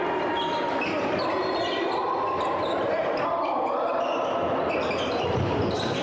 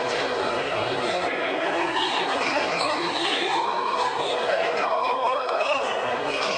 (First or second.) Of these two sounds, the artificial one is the second